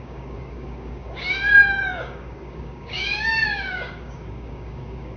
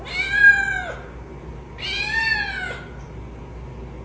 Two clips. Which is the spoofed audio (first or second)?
first